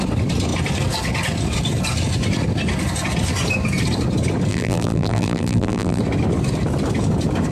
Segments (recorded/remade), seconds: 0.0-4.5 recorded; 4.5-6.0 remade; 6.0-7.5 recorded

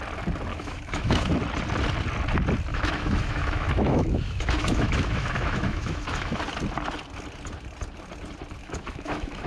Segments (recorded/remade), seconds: 0.0-0.5 recorded; 0.5-1.3 remade; 1.3-2.7 recorded; 2.7-6.4 remade; 6.4-8.6 recorded; 8.6-9.5 remade

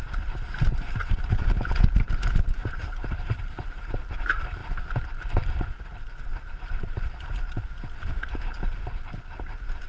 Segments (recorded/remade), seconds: 0.0-2.6 recorded; 2.6-4.0 remade; 4.0-9.9 recorded

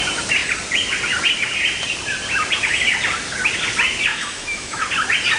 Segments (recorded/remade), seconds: 0.0-4.1 recorded; 4.1-4.9 remade; 4.9-5.4 recorded

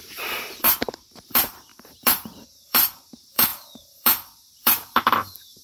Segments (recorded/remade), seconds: 0.0-5.6 remade

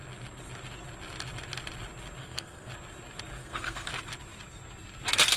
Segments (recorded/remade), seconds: 0.0-2.2 recorded; 2.2-2.7 remade; 2.7-3.4 recorded; 3.4-3.9 remade; 3.9-5.4 recorded

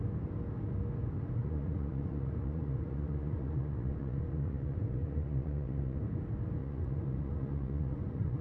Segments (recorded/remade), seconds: 0.0-1.4 recorded; 1.4-6.0 remade; 6.0-6.6 recorded; 6.6-8.4 remade

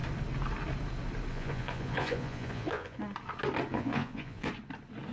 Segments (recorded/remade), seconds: 0.0-1.3 recorded; 1.3-3.0 remade; 3.0-3.7 recorded; 3.7-4.5 remade; 4.5-5.1 recorded